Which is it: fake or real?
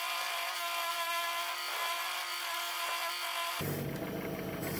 real